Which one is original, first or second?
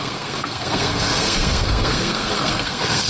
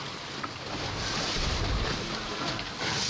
second